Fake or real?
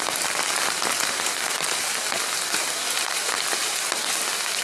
real